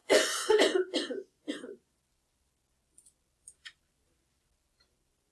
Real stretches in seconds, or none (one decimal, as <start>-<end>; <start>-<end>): 2.0-5.3